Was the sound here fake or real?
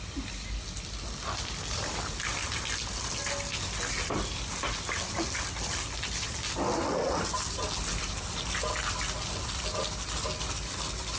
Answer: real